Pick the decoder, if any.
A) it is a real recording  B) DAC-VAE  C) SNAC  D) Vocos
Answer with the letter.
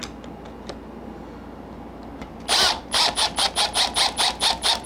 A